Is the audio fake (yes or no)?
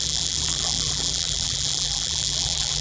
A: yes